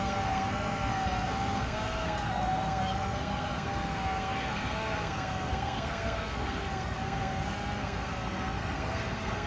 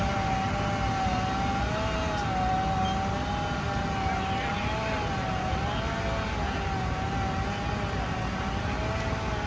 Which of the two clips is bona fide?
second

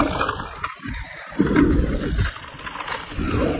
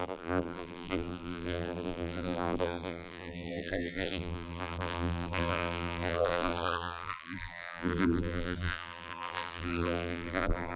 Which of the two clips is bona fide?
first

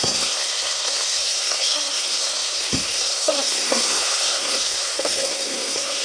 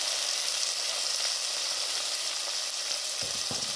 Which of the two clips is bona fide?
second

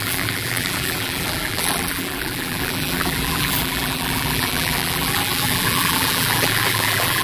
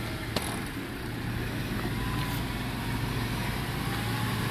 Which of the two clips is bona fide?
second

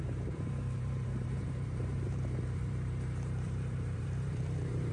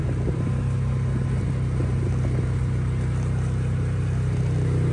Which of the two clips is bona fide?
second